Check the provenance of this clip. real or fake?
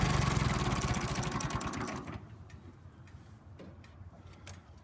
real